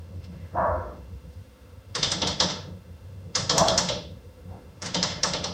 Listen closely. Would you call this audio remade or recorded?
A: remade